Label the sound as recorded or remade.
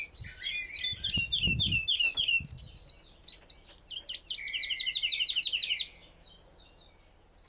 recorded